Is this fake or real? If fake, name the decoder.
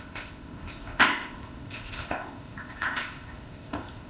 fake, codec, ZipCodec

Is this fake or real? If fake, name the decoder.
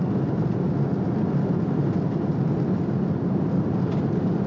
real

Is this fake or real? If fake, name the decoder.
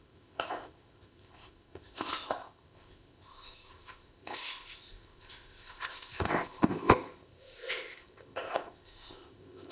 fake, codec, ZipCodec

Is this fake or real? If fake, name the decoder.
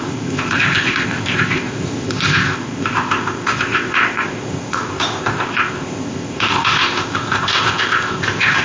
fake, codec, ZipCodec